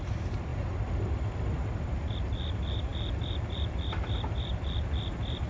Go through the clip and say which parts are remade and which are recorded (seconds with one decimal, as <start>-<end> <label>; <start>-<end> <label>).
0.0-0.5 remade; 0.5-1.6 recorded; 1.6-5.5 remade